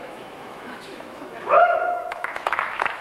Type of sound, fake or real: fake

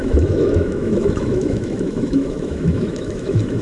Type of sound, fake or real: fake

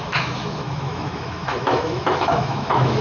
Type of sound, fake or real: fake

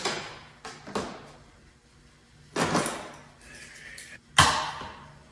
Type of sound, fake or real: real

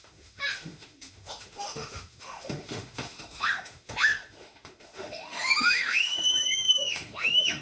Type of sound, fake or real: fake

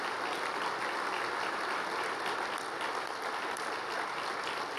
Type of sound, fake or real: real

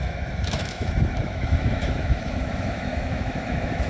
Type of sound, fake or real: fake